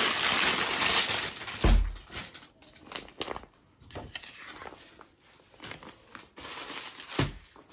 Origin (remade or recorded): recorded